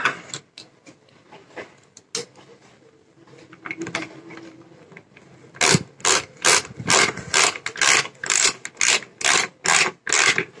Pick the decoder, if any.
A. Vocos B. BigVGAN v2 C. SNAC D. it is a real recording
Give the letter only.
D